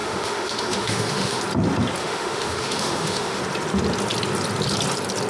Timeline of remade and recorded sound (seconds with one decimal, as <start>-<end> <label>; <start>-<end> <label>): 0.0-1.4 remade; 1.4-2.0 recorded; 2.0-3.4 remade; 3.4-5.3 recorded